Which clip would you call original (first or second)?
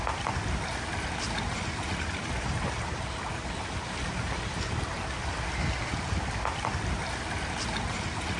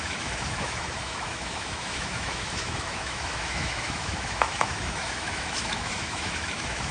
first